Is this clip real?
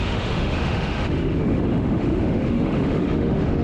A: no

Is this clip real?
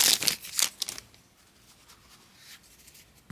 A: yes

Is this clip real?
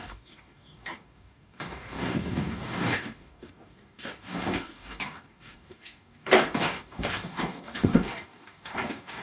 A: no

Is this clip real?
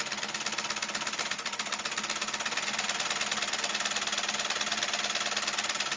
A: yes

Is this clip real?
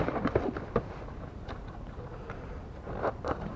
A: no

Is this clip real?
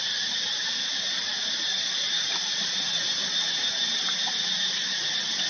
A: yes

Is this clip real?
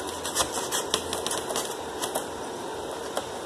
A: yes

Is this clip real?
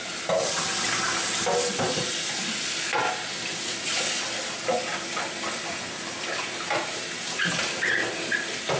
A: yes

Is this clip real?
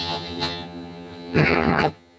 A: no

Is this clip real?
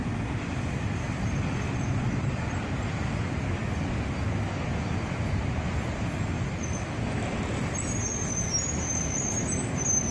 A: yes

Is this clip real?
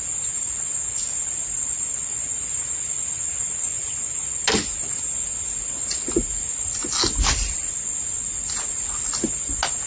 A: yes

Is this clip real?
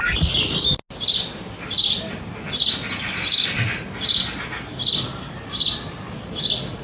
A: yes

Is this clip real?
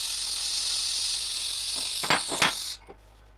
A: yes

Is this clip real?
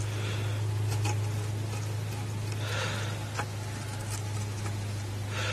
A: yes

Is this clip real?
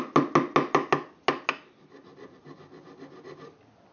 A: yes